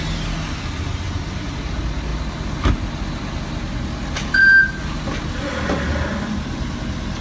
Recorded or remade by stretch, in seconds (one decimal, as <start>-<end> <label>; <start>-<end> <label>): 0.0-7.2 recorded